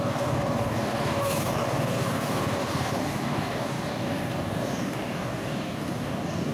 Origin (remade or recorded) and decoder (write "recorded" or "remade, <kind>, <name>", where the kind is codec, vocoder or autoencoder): remade, codec, DAC